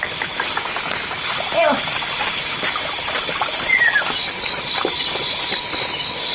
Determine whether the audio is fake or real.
real